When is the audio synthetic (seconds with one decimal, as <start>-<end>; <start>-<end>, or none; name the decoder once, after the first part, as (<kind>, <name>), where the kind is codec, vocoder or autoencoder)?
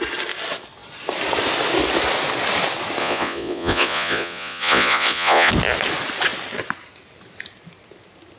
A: 3.0-5.5 (vocoder, Vocos)